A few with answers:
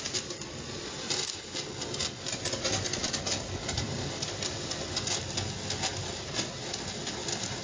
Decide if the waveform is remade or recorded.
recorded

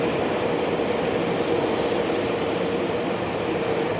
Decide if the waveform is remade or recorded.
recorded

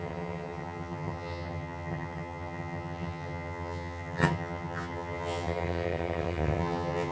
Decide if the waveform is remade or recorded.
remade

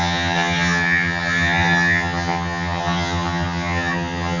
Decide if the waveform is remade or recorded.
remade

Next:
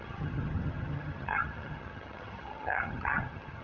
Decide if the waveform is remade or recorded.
remade